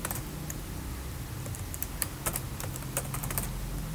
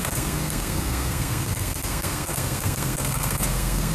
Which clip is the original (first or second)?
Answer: first